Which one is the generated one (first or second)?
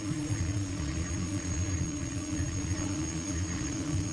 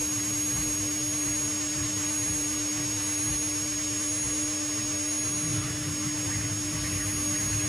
first